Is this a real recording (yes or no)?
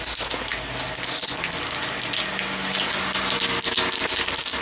yes